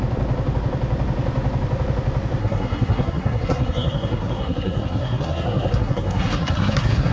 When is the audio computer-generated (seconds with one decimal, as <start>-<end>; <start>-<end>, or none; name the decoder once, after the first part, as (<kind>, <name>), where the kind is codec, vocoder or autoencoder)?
2.4-7.1 (codec, SNAC)